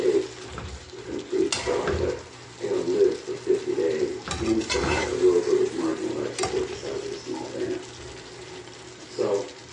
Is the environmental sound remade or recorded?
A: recorded